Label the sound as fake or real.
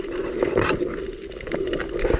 real